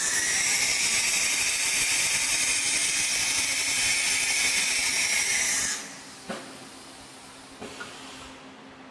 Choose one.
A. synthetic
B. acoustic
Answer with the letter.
B